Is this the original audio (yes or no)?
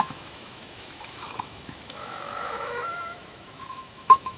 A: no